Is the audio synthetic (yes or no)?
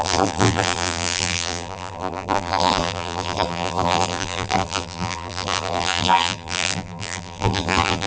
yes